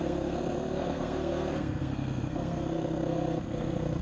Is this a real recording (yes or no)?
no